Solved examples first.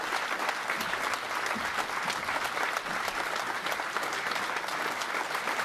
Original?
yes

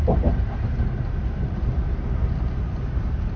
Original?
yes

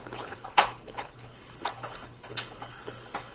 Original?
no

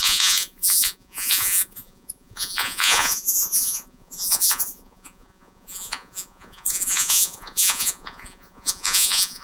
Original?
no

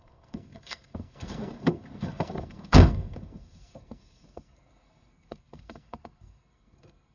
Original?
no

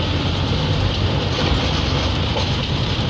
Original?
yes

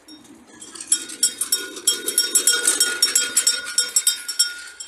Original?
yes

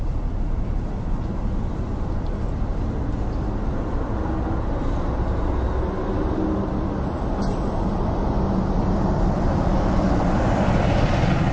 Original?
yes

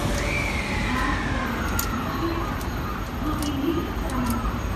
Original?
yes